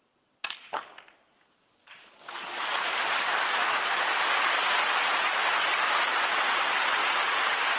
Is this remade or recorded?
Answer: recorded